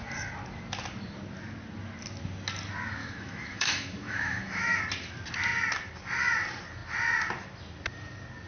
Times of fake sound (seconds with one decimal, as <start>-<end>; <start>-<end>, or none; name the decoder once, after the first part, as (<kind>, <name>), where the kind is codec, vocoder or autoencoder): 3.0-4.8 (autoencoder, DAC-VAE)